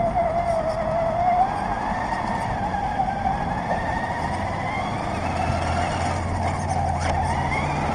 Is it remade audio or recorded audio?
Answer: recorded